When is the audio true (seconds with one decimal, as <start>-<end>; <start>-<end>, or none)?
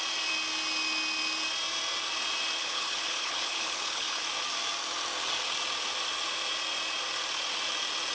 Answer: 0.0-2.6; 4.2-8.1